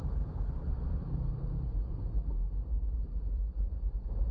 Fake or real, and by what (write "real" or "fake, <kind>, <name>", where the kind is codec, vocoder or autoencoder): fake, vocoder, BigVGAN v2